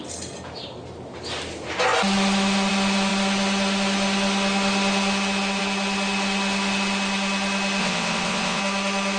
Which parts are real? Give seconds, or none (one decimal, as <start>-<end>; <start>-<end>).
0.0-7.8; 8.6-9.2